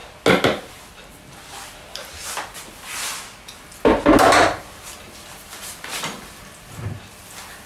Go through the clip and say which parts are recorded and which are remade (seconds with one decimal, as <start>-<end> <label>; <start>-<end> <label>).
0.0-7.7 recorded